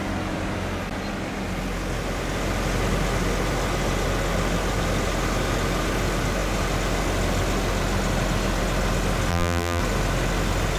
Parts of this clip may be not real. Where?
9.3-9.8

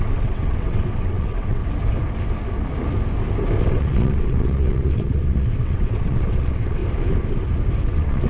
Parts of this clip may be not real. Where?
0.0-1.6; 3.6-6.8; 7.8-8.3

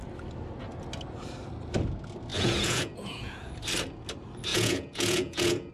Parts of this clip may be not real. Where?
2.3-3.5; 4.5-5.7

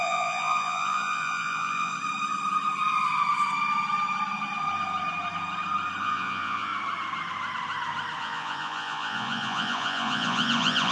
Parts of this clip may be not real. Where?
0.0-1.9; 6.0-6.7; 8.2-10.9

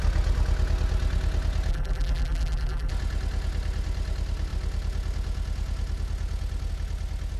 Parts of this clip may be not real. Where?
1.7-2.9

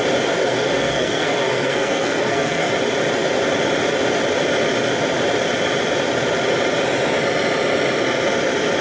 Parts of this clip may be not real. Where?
0.4-2.7

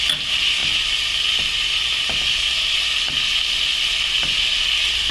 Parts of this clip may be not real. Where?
none

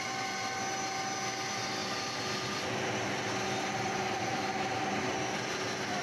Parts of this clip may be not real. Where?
none